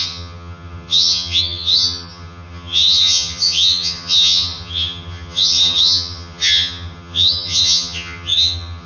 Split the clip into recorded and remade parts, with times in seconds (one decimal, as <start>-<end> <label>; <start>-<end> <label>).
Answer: 0.0-8.9 remade